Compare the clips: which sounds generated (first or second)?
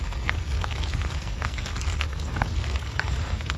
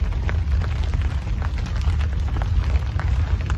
first